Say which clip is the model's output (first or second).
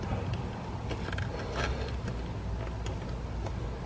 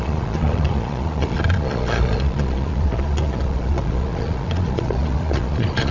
second